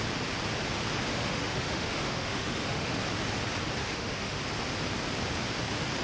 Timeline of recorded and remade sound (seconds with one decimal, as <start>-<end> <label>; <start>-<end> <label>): 0.0-1.1 recorded; 1.1-3.0 remade; 3.0-3.8 recorded; 3.8-4.4 remade; 4.4-6.0 recorded